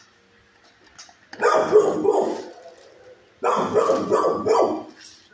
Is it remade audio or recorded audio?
recorded